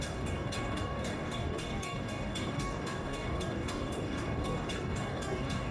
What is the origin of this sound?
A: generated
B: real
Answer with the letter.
A